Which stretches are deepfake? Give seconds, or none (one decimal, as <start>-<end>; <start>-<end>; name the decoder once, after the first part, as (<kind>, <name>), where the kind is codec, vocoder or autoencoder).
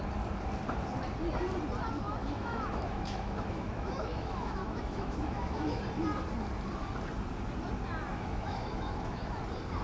2.2-5.8 (autoencoder, DAC-VAE); 8.1-9.4